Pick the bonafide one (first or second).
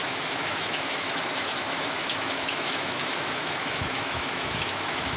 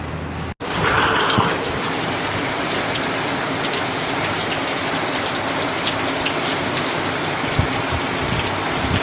second